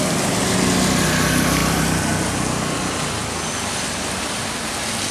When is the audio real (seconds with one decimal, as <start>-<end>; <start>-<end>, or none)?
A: 0.0-1.6; 2.4-5.1